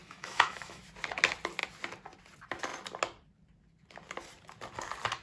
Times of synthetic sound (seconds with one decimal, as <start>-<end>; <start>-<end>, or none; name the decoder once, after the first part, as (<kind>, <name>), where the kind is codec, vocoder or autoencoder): 0.0-0.8 (autoencoder, DAC-VAE)